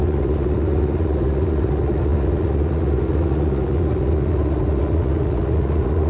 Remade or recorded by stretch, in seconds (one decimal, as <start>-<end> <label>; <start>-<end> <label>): 0.0-6.1 remade

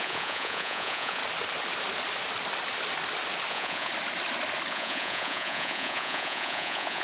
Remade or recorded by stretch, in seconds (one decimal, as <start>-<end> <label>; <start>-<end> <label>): 0.0-1.2 remade; 1.2-3.5 recorded; 3.5-3.9 remade; 3.9-4.7 recorded; 4.7-7.0 remade

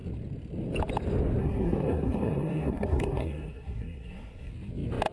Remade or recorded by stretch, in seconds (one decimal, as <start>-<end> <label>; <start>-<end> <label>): 0.0-1.4 recorded; 1.4-4.5 remade; 4.5-5.1 recorded